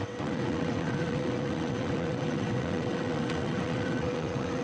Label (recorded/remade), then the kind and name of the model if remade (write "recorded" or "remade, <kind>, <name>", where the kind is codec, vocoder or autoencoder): remade, vocoder, WaveNeXt